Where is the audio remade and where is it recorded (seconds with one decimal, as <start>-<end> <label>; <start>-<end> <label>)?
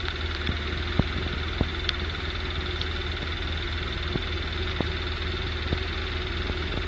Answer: 0.0-6.9 recorded